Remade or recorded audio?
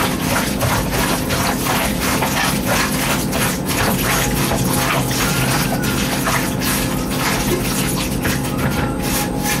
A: recorded